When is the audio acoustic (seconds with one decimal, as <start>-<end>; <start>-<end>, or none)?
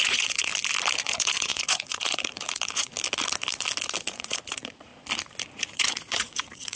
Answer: 0.5-1.0; 2.9-4.1; 4.9-5.5